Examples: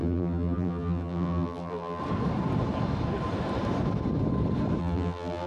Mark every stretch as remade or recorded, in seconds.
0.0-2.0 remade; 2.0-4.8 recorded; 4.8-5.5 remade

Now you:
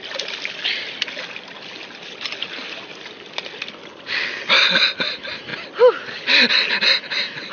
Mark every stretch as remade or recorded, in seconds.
0.0-7.5 recorded

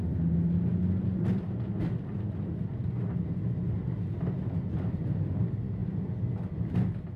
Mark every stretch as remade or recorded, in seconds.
0.0-7.2 recorded

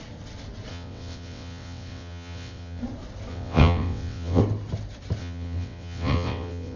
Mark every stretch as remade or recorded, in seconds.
0.0-0.7 recorded; 0.7-2.8 remade; 2.8-3.3 recorded; 3.3-4.4 remade; 4.4-5.2 recorded; 5.2-6.8 remade

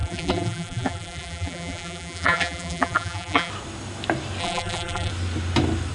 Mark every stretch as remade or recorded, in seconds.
0.0-3.5 remade; 3.5-4.4 recorded; 4.4-5.1 remade; 5.1-5.9 recorded